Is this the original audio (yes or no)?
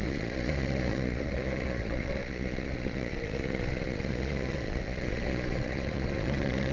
no